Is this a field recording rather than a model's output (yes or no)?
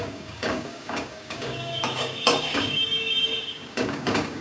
no